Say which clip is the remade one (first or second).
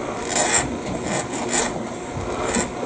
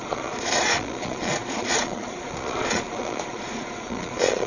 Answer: second